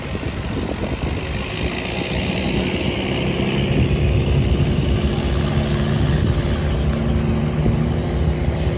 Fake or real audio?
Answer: real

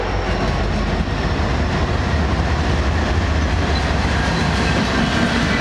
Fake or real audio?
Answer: real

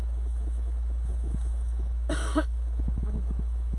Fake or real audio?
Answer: fake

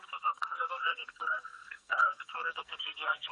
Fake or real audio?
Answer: fake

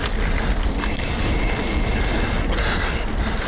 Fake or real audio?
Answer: real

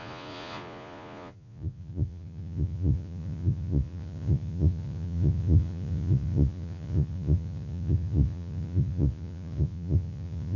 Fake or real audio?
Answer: fake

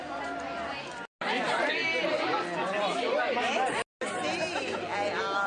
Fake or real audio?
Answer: real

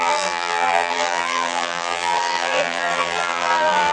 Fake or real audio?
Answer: fake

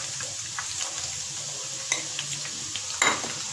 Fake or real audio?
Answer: real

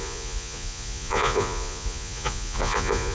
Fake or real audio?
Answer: fake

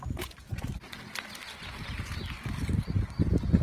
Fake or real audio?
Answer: real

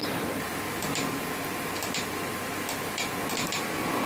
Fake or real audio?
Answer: real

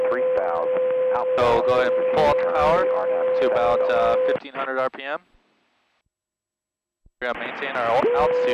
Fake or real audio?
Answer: real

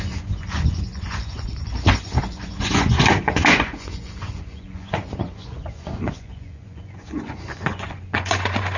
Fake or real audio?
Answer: fake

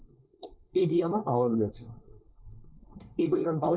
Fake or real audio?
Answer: fake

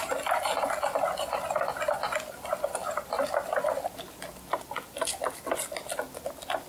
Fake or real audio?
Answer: real